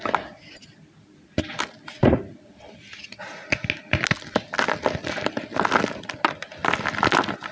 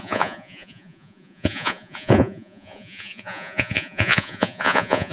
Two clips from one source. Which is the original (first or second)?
first